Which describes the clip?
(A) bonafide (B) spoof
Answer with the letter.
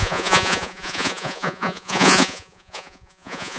B